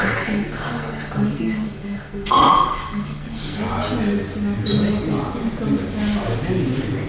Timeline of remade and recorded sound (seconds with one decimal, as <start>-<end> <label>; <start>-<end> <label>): 0.0-3.6 remade; 3.6-7.1 recorded